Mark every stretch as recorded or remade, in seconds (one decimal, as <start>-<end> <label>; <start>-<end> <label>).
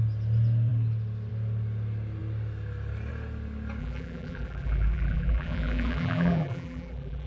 0.0-3.8 recorded; 3.8-7.3 remade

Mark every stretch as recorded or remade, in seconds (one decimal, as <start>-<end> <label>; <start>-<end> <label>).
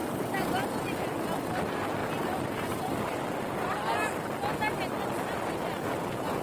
0.0-6.4 recorded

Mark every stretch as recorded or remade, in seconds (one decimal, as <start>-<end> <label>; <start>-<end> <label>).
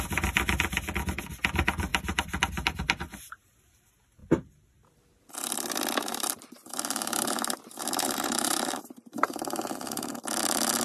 0.0-1.9 recorded; 1.9-3.8 remade; 3.8-6.1 recorded; 6.1-10.1 remade; 10.1-10.8 recorded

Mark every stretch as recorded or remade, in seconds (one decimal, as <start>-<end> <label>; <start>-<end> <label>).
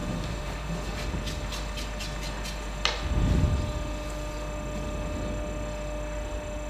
0.0-0.7 remade; 0.7-6.7 recorded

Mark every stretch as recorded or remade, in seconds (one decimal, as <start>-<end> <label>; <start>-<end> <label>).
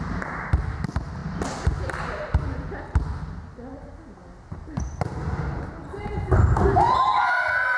0.0-7.8 recorded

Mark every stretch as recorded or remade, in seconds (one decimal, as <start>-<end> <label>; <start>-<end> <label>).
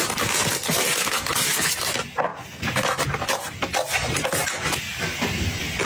0.0-5.8 recorded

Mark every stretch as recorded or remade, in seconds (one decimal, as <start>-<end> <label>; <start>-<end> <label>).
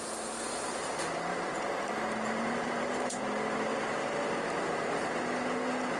0.0-1.3 recorded; 1.3-3.2 remade; 3.2-3.7 recorded; 3.7-4.3 remade; 4.3-6.0 recorded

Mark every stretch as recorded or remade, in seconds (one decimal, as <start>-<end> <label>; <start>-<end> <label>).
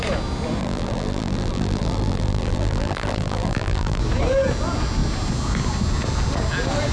0.0-0.6 recorded; 0.6-4.0 remade; 4.0-6.9 recorded